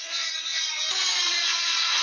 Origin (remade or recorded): remade